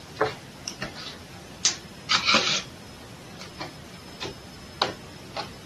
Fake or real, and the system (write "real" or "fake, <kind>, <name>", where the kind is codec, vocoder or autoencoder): real